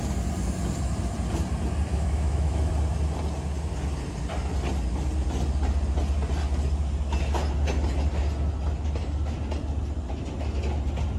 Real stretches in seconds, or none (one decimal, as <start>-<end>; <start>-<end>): 0.0-1.9; 2.7-11.2